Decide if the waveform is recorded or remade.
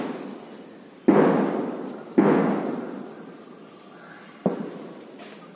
recorded